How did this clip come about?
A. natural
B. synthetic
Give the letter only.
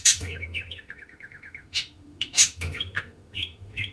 B